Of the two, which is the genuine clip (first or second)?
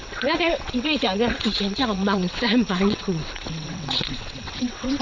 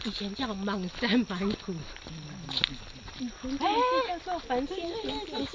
second